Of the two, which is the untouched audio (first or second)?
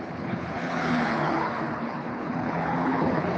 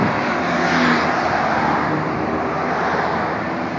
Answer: second